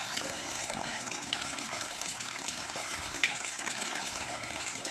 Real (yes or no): no